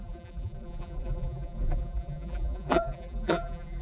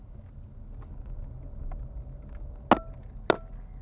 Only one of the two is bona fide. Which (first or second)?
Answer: second